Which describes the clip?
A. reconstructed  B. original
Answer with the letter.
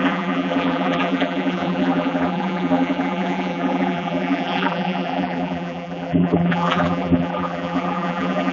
A